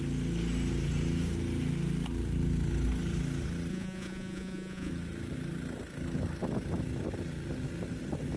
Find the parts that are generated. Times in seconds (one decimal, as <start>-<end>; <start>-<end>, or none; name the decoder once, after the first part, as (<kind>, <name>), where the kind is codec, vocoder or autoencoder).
3.7-4.9 (vocoder, Vocos)